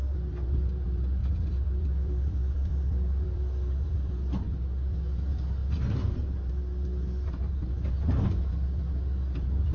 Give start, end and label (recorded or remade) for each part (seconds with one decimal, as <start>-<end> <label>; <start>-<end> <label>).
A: 0.0-1.2 recorded; 1.2-4.3 remade; 4.3-9.7 recorded